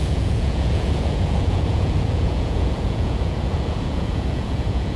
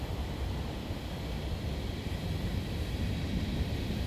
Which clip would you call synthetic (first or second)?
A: first